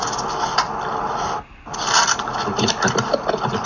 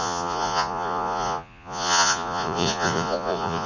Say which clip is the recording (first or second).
first